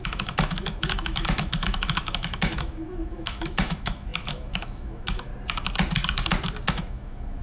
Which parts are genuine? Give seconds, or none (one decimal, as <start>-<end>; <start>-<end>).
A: 5.3-6.7